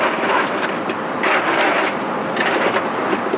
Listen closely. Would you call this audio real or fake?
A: real